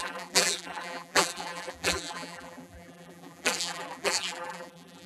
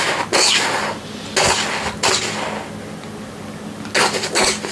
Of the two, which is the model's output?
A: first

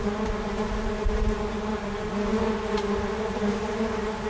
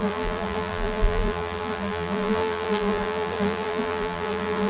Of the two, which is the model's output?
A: second